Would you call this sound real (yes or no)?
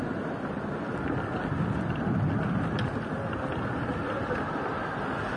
yes